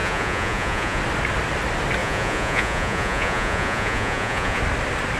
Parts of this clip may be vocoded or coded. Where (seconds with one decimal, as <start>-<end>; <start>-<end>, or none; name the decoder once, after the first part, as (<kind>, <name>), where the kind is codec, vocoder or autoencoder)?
0.0-1.0 (vocoder, Vocos); 2.0-4.6